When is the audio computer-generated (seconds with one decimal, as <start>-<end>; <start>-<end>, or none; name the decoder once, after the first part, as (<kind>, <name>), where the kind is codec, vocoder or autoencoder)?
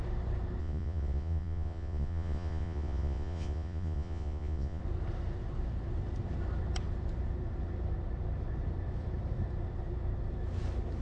0.6-4.8 (vocoder, Vocos)